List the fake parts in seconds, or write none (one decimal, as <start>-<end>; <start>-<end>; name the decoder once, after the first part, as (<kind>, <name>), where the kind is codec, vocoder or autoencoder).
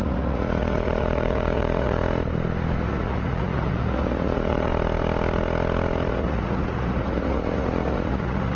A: 0.0-2.0 (vocoder, Vocos); 2.8-4.7; 6.1-8.6